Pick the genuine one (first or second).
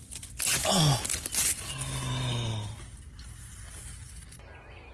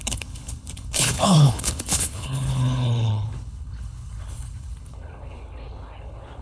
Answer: first